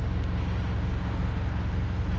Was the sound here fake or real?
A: real